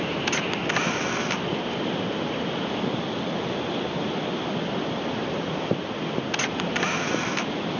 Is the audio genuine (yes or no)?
yes